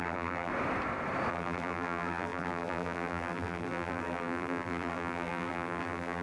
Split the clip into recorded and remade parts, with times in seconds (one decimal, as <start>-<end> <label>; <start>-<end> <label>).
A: 0.0-0.5 remade; 0.5-1.3 recorded; 1.3-6.2 remade